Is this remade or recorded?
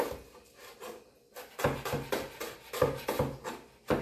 recorded